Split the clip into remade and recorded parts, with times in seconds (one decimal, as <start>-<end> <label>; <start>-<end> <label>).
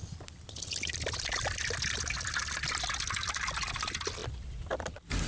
0.0-5.3 recorded